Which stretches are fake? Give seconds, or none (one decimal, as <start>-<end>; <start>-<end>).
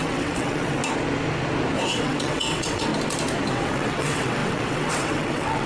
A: 0.0-0.8; 1.9-2.9; 3.5-5.7